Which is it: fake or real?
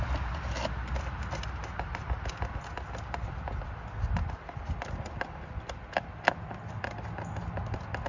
real